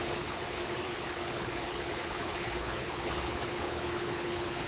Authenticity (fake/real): fake